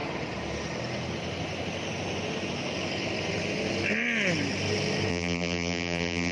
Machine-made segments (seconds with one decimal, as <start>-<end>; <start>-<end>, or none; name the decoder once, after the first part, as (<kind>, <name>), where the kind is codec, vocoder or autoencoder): 5.1-6.3 (vocoder, BigVGAN v2)